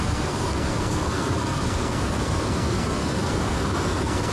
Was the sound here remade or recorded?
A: remade